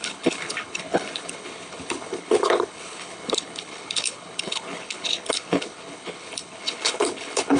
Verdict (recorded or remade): remade